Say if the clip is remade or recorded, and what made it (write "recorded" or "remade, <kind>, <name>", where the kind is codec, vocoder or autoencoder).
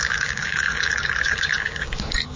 remade, codec, DAC